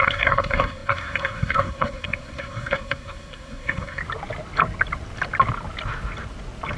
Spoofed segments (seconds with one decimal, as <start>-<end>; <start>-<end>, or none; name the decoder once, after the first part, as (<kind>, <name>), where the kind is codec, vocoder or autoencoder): 0.0-4.0 (codec, SNAC)